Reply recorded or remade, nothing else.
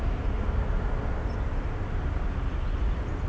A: recorded